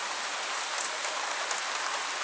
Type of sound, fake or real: real